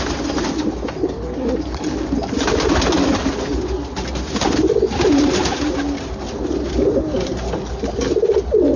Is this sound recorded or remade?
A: recorded